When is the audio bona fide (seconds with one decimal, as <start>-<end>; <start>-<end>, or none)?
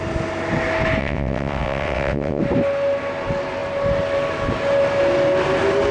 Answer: 0.0-1.0; 2.4-5.9